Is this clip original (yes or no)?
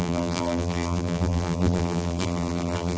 no